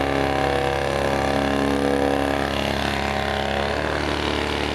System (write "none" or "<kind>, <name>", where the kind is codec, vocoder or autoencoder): none